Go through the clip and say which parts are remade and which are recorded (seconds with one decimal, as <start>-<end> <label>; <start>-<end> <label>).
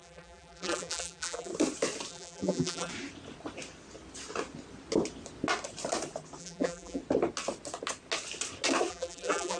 0.0-1.5 remade; 1.5-2.1 recorded; 2.1-2.9 remade; 2.9-6.4 recorded; 6.4-7.0 remade; 7.0-8.9 recorded; 8.9-9.6 remade